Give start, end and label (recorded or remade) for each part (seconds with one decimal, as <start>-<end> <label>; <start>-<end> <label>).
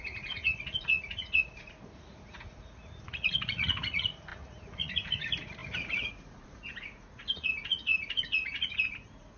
0.0-9.4 remade